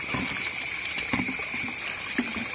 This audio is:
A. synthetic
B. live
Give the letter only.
B